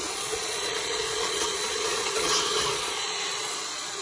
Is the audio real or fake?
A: fake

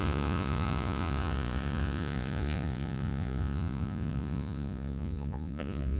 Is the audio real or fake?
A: fake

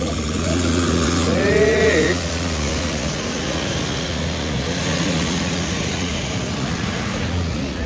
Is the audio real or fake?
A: fake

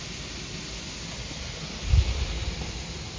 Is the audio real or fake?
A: real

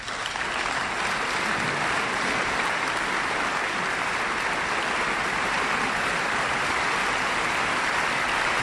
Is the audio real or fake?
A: real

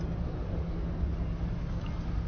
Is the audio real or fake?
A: real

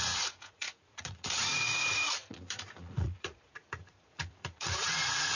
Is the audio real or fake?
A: fake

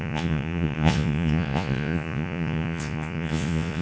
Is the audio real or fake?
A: fake